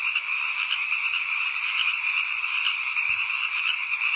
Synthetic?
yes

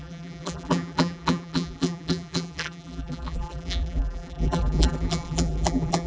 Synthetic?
yes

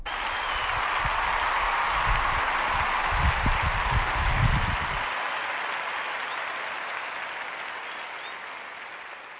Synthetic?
no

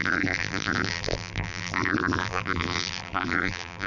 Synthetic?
yes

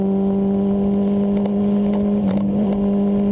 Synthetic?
no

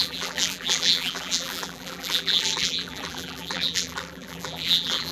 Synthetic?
yes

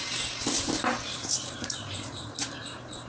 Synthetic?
yes